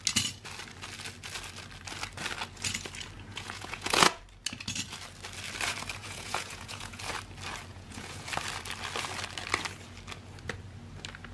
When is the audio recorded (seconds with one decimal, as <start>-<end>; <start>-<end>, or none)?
0.0-3.3; 4.2-6.0; 7.0-7.7; 8.3-11.3